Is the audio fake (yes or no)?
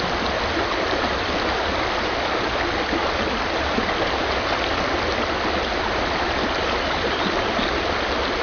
no